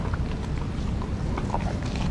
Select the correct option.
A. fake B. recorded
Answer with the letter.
B